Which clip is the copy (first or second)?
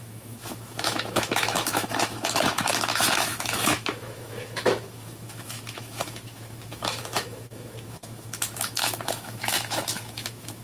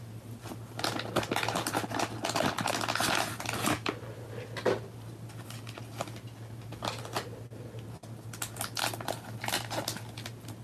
first